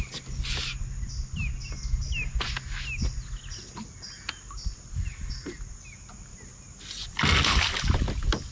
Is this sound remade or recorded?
recorded